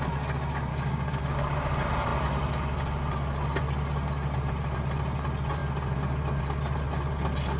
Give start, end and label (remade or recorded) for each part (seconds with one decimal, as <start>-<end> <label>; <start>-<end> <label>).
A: 0.0-0.7 recorded; 0.7-1.2 remade; 1.2-7.6 recorded